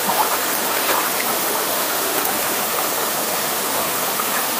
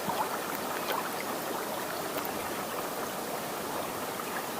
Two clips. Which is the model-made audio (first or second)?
first